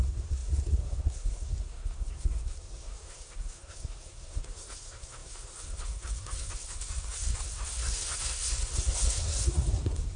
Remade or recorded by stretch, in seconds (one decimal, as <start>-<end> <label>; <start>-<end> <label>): 0.0-10.2 remade